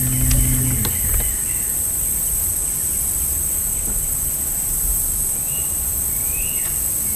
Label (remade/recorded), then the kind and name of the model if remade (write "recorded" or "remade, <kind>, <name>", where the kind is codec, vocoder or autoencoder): recorded